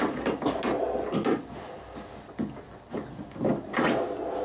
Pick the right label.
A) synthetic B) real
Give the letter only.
B